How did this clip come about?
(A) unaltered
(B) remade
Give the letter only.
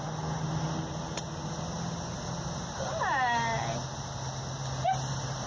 A